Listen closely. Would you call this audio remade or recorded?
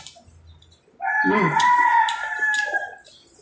recorded